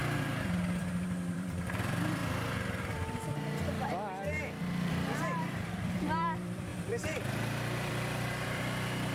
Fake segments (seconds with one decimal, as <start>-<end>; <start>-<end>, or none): 0.8-2.2; 4.9-9.1